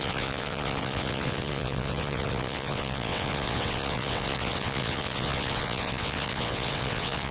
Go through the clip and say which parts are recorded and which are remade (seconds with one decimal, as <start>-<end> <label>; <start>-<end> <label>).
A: 0.0-7.3 remade